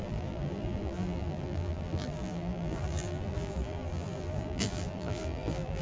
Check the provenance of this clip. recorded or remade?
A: remade